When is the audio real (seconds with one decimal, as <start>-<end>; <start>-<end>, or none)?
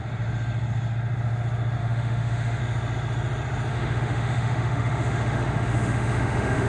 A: 0.0-1.8; 2.6-3.7